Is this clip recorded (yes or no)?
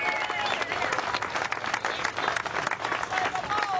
yes